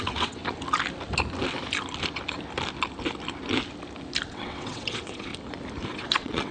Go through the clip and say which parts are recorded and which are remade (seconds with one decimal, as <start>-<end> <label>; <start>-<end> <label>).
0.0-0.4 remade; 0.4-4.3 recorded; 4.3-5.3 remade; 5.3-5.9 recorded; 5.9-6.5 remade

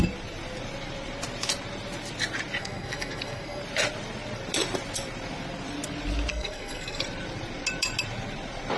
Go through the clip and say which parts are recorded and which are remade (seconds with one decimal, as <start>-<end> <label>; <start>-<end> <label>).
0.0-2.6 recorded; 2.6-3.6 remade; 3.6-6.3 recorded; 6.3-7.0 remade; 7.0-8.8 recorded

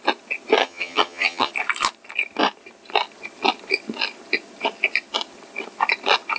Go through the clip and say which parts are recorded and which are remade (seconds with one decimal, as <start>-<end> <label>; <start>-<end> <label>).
0.0-0.6 recorded; 0.6-1.5 remade; 1.5-6.4 recorded

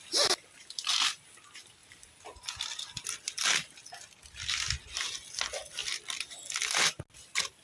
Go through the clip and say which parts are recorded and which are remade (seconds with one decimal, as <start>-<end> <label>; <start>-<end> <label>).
0.0-7.6 recorded

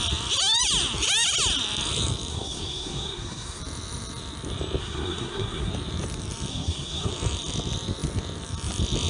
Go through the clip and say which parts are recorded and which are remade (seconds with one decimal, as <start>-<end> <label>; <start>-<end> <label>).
0.0-2.3 recorded; 2.3-3.6 remade; 3.6-4.8 recorded; 4.8-5.7 remade; 5.7-6.5 recorded; 6.5-7.1 remade; 7.1-9.1 recorded

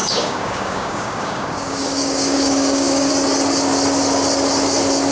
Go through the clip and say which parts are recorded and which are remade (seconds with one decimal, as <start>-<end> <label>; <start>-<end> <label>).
0.0-3.1 remade; 3.1-5.1 recorded

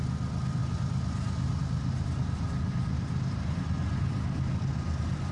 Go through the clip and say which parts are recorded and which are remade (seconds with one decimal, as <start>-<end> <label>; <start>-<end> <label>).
0.0-5.3 recorded